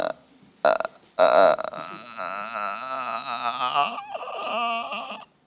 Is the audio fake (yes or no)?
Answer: no